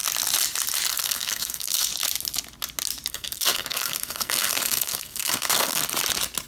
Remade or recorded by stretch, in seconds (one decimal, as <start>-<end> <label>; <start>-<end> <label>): 0.0-0.9 recorded; 0.9-1.9 remade; 1.9-3.1 recorded; 3.1-5.8 remade; 5.8-6.5 recorded